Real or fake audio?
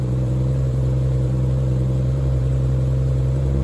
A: fake